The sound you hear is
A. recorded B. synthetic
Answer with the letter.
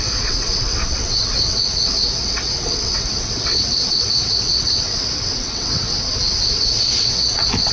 B